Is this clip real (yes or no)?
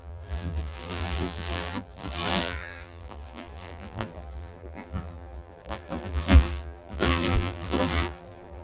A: no